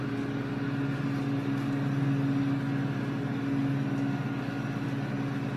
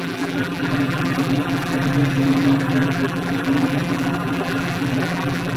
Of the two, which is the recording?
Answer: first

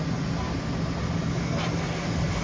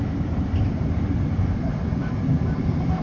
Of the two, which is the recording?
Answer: first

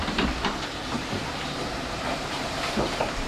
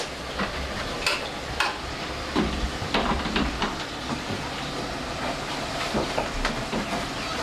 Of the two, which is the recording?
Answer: second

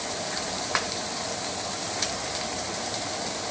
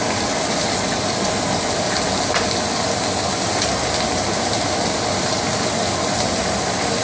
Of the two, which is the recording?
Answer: second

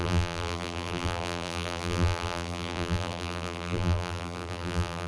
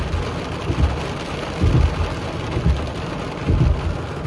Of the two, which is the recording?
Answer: second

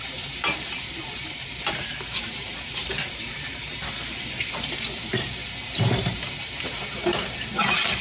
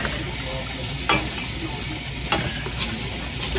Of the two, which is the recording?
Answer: second